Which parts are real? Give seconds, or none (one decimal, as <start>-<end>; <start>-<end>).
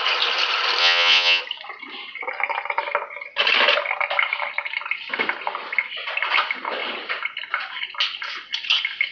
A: 0.0-0.8; 1.4-9.1